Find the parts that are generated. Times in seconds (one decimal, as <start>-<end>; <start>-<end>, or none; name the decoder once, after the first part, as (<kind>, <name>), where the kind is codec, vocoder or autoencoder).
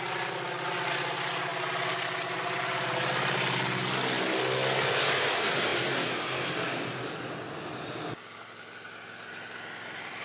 none